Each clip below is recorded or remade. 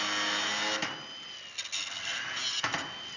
recorded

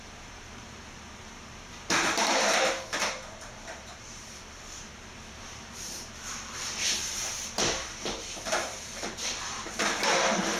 remade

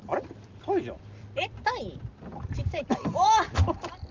remade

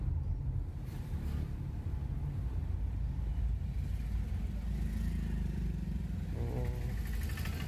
recorded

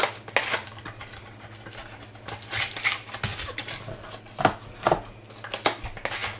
recorded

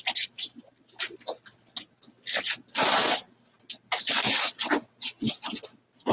recorded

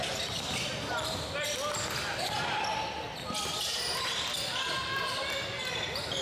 recorded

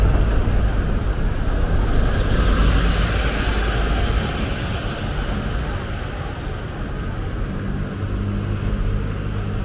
recorded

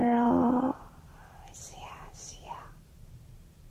remade